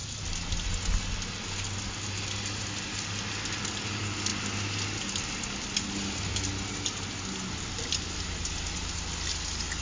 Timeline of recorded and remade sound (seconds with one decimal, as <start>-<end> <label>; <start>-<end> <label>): 0.0-9.8 recorded